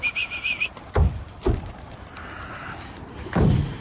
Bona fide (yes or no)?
no